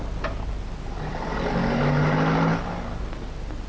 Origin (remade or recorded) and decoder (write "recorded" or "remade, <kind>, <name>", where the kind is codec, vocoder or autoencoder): recorded